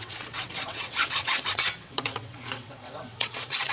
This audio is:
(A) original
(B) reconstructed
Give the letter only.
B